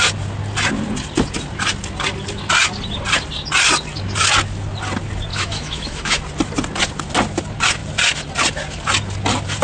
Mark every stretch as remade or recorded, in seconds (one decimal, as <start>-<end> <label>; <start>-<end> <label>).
0.0-5.3 recorded; 5.3-6.2 remade; 6.2-9.6 recorded